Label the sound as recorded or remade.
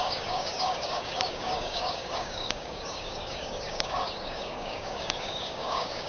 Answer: remade